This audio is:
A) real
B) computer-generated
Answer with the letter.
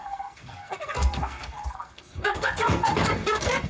B